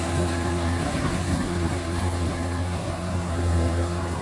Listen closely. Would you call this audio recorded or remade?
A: remade